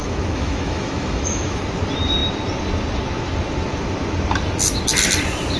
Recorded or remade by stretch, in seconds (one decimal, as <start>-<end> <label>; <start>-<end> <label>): 0.0-1.6 remade; 1.6-5.6 recorded